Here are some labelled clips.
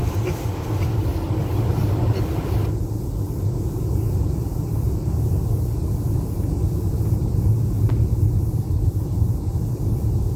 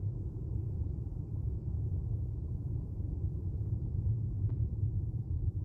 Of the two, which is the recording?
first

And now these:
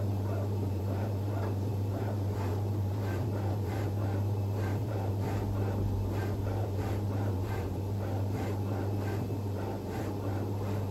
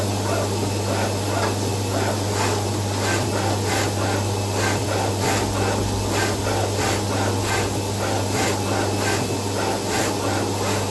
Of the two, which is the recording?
second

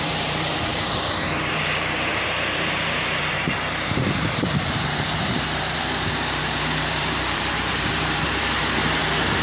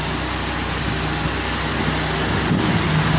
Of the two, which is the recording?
second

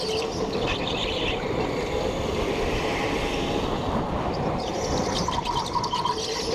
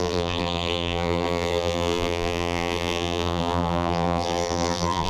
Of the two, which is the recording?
first